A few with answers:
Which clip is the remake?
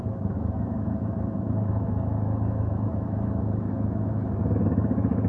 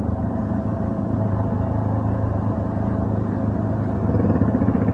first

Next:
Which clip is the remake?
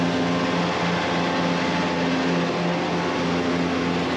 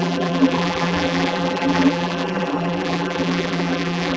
second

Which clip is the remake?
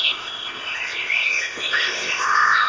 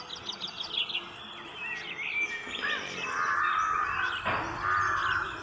first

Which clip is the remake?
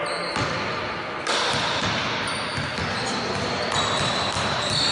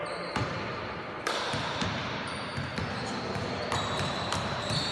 second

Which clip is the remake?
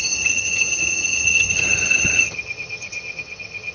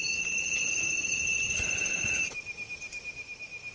first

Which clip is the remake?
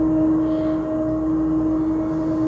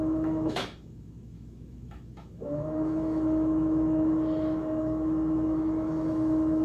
second